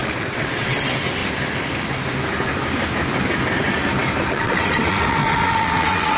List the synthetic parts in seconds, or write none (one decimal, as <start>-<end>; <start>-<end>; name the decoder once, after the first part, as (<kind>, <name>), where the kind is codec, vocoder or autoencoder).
0.0-1.2 (vocoder, WaveNeXt); 4.3-6.2